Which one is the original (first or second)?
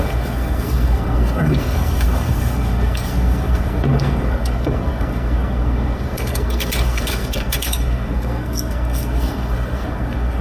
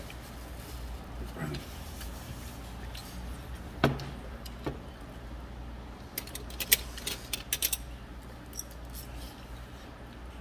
second